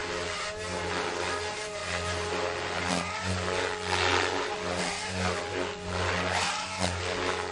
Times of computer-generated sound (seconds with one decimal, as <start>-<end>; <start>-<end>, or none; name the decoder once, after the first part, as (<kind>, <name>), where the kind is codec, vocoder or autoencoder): none